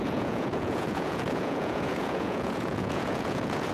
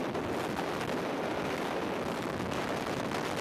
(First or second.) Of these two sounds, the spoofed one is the first